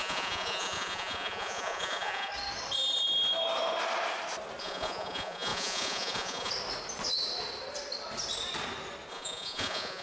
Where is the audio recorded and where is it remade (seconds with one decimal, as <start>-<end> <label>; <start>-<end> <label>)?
0.0-2.3 remade; 2.3-4.6 recorded; 4.6-6.5 remade; 6.5-9.1 recorded; 9.1-10.0 remade

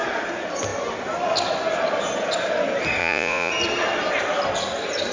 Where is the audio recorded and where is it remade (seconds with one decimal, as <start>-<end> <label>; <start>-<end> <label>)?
0.0-3.0 recorded; 3.0-3.5 remade; 3.5-5.1 recorded

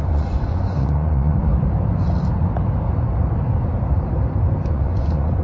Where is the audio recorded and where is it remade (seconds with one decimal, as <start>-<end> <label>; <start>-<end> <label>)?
0.0-1.5 remade; 1.5-4.7 recorded; 4.7-5.4 remade

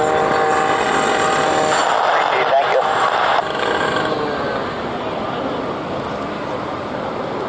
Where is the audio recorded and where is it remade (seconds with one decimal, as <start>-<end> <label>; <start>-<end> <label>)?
0.0-7.5 recorded

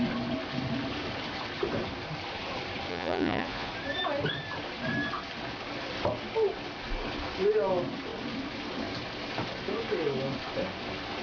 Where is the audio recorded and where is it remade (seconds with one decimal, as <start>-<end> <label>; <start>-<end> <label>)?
0.0-2.9 recorded; 2.9-3.7 remade; 3.7-11.2 recorded